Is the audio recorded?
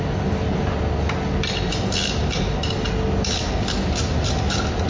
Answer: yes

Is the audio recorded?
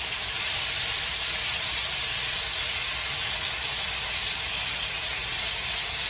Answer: yes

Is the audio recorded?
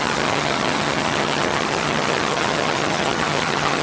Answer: no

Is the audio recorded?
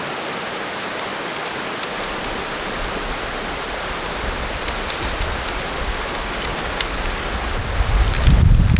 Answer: yes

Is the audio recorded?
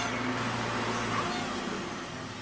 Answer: yes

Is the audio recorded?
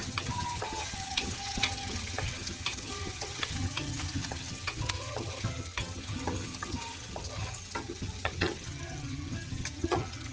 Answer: no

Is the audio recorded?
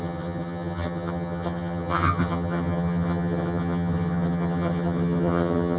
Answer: no